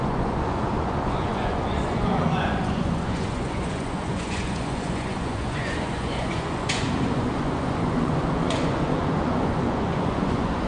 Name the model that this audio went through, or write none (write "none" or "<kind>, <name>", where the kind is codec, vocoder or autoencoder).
vocoder, Vocos